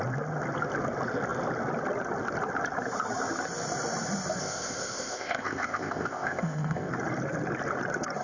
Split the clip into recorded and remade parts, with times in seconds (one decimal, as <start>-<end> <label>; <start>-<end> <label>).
0.0-4.4 recorded; 4.4-6.9 remade; 6.9-8.2 recorded